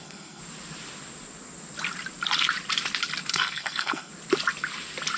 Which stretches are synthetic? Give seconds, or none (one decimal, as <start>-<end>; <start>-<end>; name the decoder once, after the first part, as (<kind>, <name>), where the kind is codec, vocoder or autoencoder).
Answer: 0.0-0.4 (codec, SNAC); 3.3-4.1

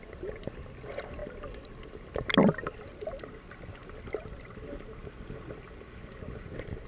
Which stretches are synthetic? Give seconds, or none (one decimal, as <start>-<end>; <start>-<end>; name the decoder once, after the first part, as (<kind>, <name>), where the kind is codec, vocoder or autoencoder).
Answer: none